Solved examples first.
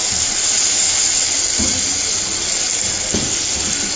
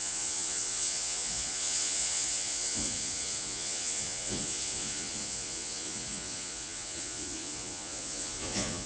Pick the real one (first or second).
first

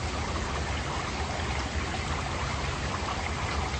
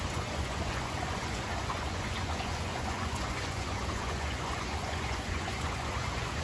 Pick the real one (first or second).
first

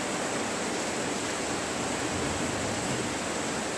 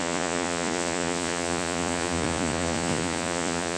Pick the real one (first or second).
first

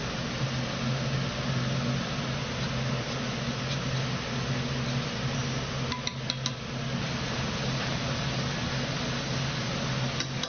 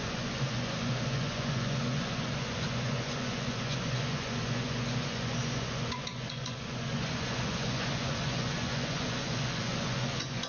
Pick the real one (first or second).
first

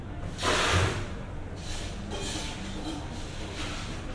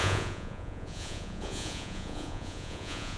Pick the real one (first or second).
first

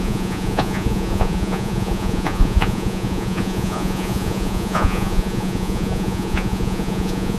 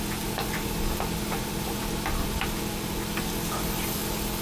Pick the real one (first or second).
second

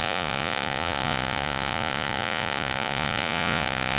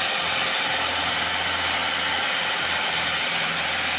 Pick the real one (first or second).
second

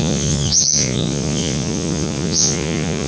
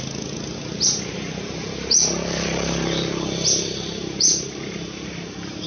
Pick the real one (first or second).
second